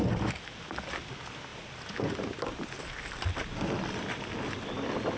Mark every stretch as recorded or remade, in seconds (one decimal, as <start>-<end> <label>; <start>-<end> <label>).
0.0-5.2 recorded